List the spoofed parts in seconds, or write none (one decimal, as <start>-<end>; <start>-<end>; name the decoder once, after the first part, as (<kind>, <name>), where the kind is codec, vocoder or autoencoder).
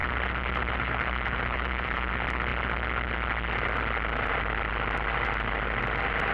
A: 0.0-2.1 (vocoder, BigVGAN v2)